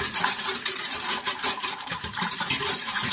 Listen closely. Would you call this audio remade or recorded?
remade